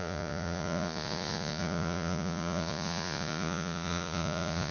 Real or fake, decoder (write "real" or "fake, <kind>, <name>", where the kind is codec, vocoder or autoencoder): fake, vocoder, Vocos